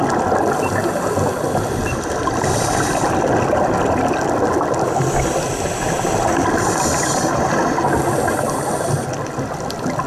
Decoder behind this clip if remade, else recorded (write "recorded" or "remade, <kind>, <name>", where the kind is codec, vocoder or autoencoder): recorded